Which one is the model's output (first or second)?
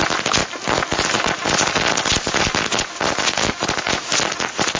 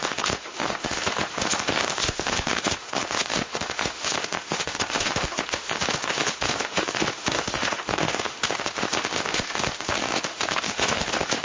second